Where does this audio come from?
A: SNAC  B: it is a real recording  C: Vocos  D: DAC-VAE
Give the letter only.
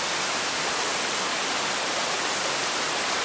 B